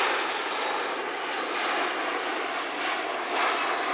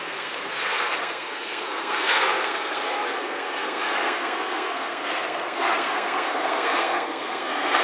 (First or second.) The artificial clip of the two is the second